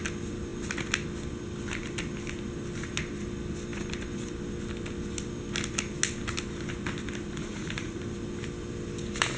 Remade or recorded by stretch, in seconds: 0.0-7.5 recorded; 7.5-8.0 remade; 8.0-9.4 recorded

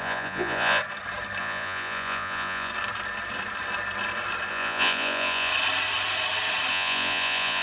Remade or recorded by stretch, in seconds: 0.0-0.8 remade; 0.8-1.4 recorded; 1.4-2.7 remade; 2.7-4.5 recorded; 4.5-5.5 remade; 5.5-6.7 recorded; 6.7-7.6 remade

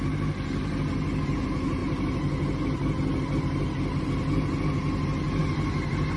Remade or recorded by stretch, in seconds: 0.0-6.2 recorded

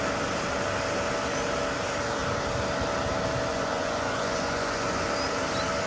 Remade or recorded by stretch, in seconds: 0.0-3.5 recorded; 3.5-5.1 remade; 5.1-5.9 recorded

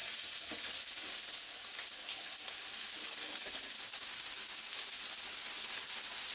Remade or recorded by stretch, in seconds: 0.0-6.3 recorded